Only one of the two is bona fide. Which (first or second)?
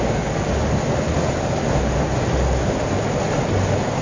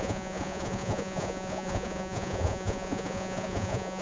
first